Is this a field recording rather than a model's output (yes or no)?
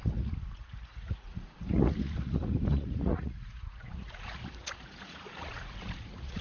no